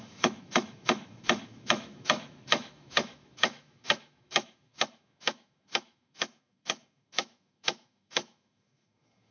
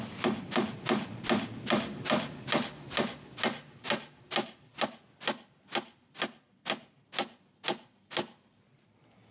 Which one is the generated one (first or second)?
first